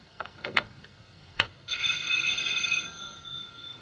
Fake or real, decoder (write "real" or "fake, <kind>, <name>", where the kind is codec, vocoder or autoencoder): fake, codec, SNAC